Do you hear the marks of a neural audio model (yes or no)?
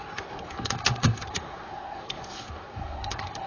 yes